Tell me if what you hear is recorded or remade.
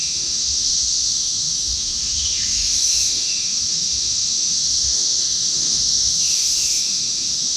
remade